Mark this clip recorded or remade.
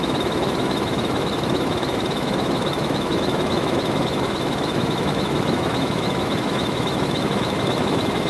remade